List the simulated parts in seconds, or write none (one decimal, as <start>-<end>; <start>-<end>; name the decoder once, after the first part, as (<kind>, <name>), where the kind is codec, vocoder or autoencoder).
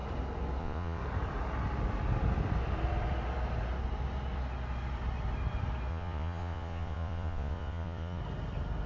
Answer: 0.6-1.0 (vocoder, Vocos); 5.9-8.2